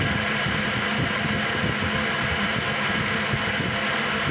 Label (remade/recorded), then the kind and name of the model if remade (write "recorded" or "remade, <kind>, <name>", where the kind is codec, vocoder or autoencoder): recorded